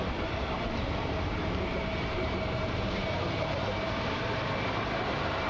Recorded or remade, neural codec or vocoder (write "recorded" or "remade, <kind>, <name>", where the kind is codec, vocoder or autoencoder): remade, vocoder, BigVGAN v2